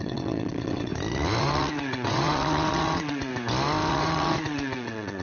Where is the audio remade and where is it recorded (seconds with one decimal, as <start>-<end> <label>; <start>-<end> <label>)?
0.0-0.9 remade; 0.9-1.4 recorded; 1.4-3.3 remade; 3.3-3.9 recorded; 3.9-5.2 remade